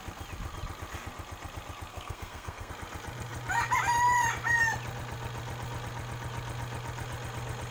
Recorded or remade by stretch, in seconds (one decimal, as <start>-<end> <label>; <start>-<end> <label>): 0.0-1.9 recorded; 1.9-2.7 remade; 2.7-7.7 recorded